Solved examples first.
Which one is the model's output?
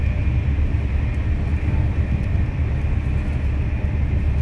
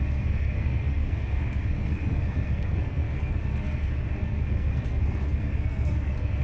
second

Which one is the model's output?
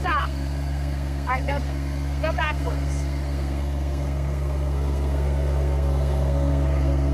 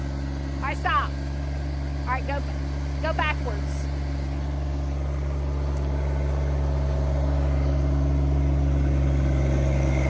first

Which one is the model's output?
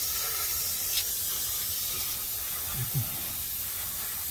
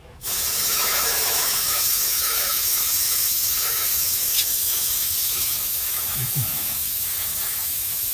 second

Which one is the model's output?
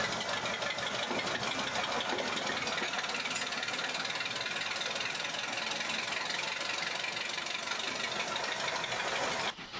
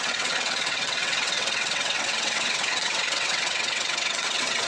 second